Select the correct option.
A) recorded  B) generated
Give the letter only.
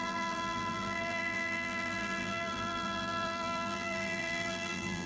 B